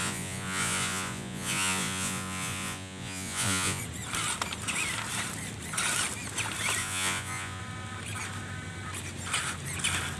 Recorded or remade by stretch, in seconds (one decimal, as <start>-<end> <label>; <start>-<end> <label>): 0.0-3.8 remade; 3.8-6.8 recorded; 6.8-7.6 remade; 7.6-10.2 recorded